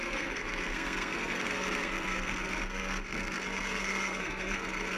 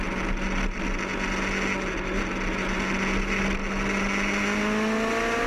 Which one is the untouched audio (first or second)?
second